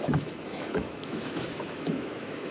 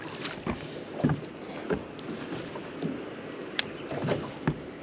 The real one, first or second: second